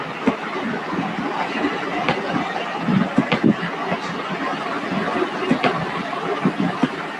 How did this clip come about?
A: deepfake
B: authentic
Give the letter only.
B